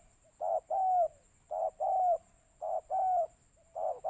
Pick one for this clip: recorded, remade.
recorded